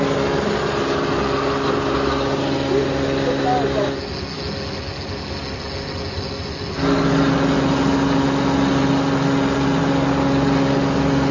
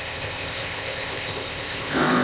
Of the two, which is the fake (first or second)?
second